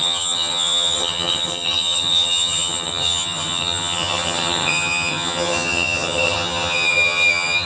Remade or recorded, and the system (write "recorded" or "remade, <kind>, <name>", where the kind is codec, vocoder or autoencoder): remade, vocoder, HiFi-GAN